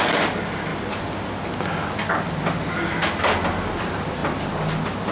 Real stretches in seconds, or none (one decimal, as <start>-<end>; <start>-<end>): 0.0-5.1